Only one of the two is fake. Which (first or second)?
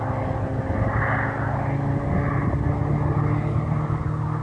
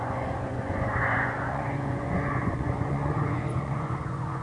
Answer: second